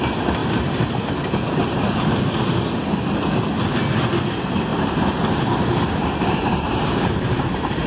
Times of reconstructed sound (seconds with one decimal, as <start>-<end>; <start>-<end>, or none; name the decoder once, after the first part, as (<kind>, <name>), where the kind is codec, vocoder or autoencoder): 4.7-7.4 (vocoder, BigVGAN v2)